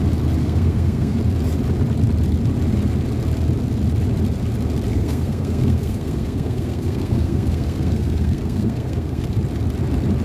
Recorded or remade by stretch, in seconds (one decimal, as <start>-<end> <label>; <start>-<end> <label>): 0.0-0.4 recorded; 0.4-1.2 remade; 1.2-4.9 recorded; 4.9-9.2 remade; 9.2-10.2 recorded